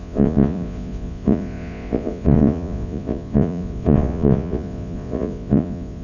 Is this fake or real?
fake